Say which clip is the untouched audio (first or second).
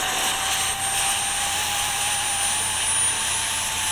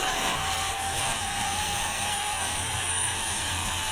first